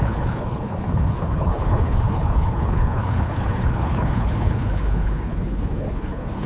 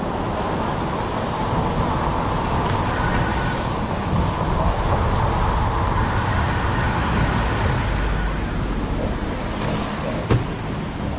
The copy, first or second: first